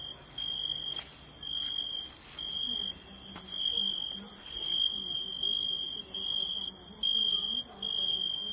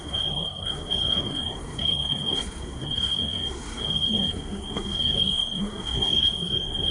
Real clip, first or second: first